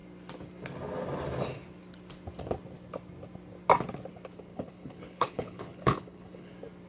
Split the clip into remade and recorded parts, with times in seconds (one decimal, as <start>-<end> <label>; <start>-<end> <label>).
0.0-4.5 recorded; 4.5-6.5 remade; 6.5-6.9 recorded